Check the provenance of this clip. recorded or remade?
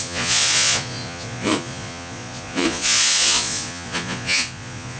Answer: remade